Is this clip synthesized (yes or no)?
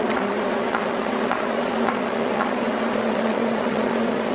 yes